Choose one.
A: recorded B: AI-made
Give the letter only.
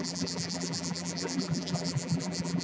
B